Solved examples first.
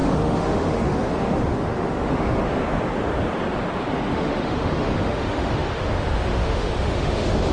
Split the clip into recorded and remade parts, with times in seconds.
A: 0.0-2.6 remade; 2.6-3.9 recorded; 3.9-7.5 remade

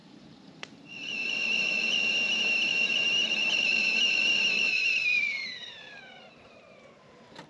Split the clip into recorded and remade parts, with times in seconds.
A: 0.0-2.1 remade; 2.1-2.7 recorded; 2.7-7.5 remade

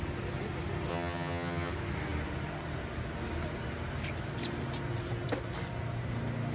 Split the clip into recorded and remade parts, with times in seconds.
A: 0.0-0.9 recorded; 0.9-1.7 remade; 1.7-6.5 recorded

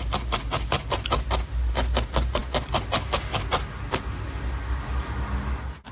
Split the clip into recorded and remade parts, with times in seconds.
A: 0.0-5.9 recorded

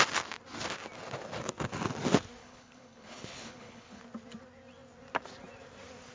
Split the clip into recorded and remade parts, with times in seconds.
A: 0.0-2.4 recorded; 2.4-4.0 remade; 4.0-6.1 recorded

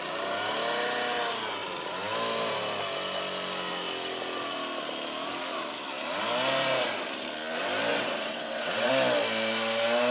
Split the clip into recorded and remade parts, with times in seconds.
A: 0.0-7.9 recorded; 7.9-8.9 remade; 8.9-10.1 recorded

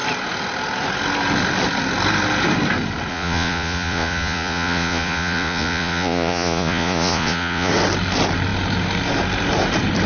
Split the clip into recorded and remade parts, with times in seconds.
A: 0.0-3.1 recorded; 3.1-7.7 remade; 7.7-10.1 recorded

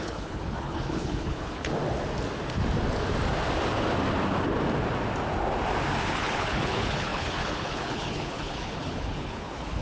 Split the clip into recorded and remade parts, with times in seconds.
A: 0.0-1.7 remade; 1.7-6.1 recorded; 6.1-9.8 remade